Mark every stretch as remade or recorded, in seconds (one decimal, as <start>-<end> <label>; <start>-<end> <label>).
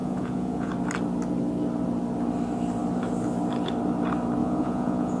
0.0-0.7 remade; 0.7-4.4 recorded; 4.4-5.2 remade